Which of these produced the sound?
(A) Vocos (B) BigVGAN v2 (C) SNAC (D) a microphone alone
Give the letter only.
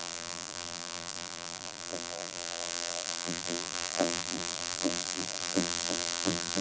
B